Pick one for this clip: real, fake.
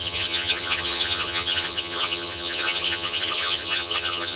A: fake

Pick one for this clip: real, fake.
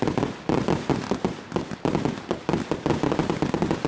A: real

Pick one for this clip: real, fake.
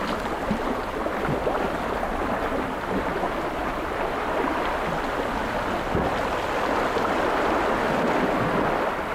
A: real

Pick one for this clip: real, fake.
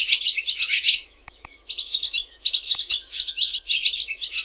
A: fake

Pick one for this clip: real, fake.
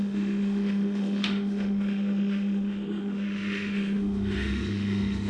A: fake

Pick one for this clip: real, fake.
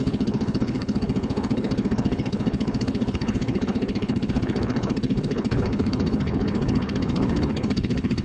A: fake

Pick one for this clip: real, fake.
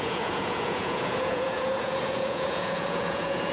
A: fake